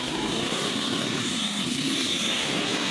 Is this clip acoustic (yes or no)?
no